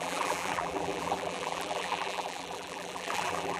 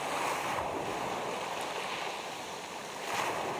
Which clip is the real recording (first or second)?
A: second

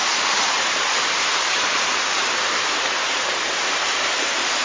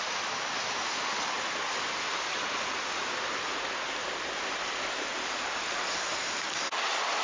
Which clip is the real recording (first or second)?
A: second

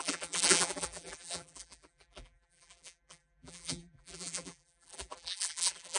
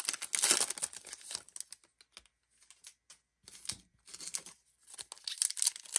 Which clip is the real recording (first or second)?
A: second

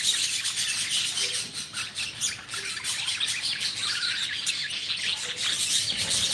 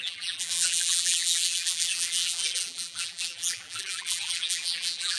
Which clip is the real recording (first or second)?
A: first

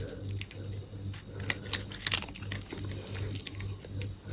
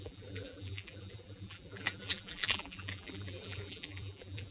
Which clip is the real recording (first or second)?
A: first